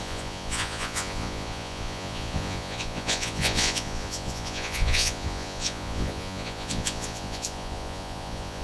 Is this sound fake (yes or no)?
yes